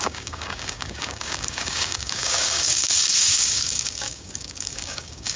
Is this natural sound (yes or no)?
no